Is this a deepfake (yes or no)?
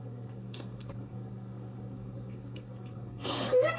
yes